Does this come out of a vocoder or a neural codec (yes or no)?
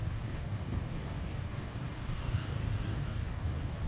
yes